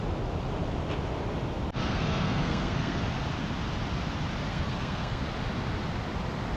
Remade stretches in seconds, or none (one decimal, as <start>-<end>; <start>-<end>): 1.8-3.0; 4.5-5.2